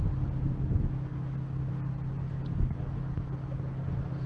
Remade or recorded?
recorded